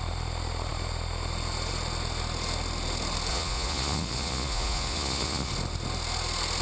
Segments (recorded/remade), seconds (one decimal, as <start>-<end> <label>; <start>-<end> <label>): 0.0-3.3 recorded; 3.3-5.5 remade; 5.5-6.6 recorded